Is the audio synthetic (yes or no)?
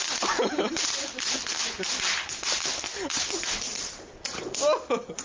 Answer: no